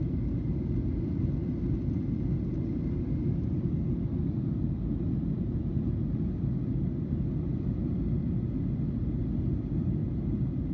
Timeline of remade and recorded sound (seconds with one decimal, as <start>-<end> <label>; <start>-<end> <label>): 0.0-10.7 recorded